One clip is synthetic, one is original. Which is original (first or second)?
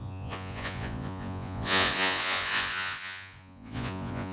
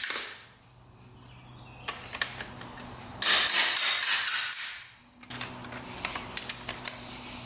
second